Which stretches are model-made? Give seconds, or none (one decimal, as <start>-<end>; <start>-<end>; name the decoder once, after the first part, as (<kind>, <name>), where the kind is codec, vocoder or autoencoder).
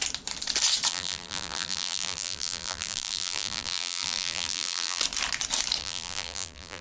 0.9-5.0 (vocoder, BigVGAN v2); 5.8-6.8